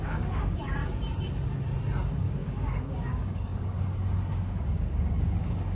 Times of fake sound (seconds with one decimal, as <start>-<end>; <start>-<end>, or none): 0.0-0.8; 2.0-5.8

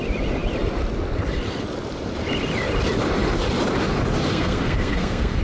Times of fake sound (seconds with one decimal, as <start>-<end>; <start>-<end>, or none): 4.3-5.4